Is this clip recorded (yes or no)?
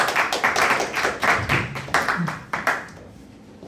no